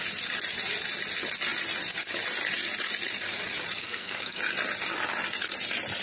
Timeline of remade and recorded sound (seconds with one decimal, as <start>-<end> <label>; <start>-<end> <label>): 0.0-3.8 recorded; 3.8-4.4 remade; 4.4-6.0 recorded